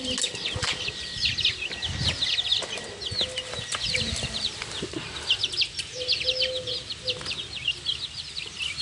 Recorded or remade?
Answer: recorded